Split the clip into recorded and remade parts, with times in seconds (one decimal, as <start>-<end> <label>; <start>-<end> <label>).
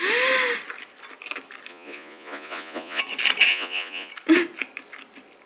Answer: 0.0-1.7 recorded; 1.7-3.0 remade; 3.0-3.5 recorded; 3.5-4.1 remade; 4.1-5.5 recorded